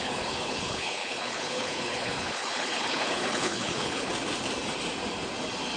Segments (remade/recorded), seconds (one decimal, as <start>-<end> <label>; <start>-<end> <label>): 0.0-4.1 remade; 4.1-5.8 recorded